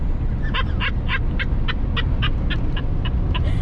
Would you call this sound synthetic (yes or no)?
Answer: no